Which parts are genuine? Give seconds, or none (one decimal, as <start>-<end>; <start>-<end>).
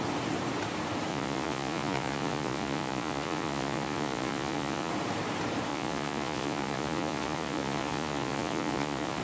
0.0-1.1; 4.9-5.7